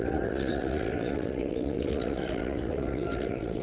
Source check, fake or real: fake